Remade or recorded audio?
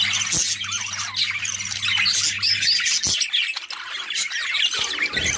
recorded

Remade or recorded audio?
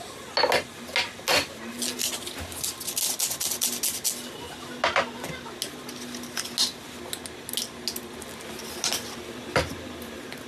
recorded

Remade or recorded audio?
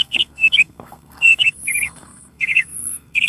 remade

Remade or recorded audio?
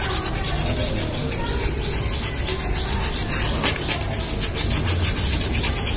recorded